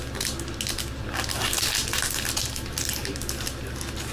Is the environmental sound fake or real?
real